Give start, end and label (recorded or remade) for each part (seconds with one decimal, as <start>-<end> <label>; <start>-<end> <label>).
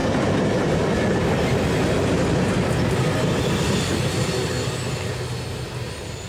0.0-6.3 recorded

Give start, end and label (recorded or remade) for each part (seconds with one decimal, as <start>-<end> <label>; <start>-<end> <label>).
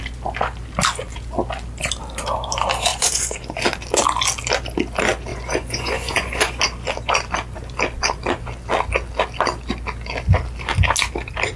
0.0-2.9 recorded; 2.9-3.6 remade; 3.6-5.3 recorded; 5.3-6.6 remade; 6.6-11.6 recorded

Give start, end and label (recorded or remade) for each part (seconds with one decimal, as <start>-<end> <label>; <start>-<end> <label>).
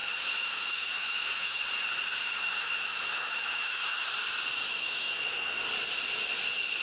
0.0-1.6 remade; 1.6-2.1 recorded; 2.1-4.1 remade; 4.1-4.6 recorded; 4.6-5.6 remade; 5.6-6.8 recorded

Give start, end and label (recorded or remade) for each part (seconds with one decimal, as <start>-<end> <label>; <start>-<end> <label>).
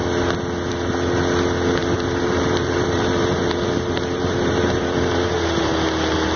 0.0-1.8 recorded; 1.8-5.6 remade; 5.6-6.4 recorded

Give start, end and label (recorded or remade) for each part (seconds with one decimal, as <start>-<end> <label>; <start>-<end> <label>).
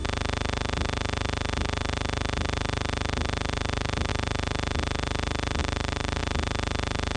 0.0-7.2 recorded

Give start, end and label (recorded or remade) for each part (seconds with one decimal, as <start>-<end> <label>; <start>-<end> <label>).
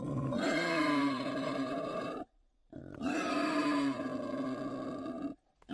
0.0-4.1 remade; 4.1-5.1 recorded; 5.1-5.7 remade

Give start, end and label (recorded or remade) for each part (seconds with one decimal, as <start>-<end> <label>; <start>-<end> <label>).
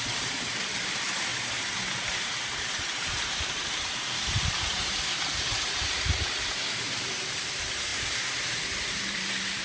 0.0-9.6 remade